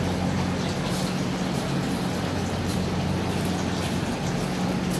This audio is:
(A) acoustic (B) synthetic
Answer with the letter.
A